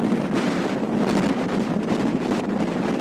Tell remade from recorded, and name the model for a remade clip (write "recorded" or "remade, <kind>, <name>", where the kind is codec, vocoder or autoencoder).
recorded